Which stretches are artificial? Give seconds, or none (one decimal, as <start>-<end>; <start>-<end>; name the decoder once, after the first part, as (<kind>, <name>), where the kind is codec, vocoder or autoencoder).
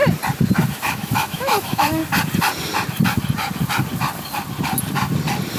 0.7-2.0 (autoencoder, DAC-VAE)